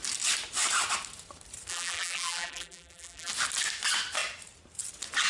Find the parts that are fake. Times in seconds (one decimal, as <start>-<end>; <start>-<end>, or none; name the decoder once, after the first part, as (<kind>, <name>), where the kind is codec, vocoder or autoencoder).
1.7-3.3 (vocoder, BigVGAN v2)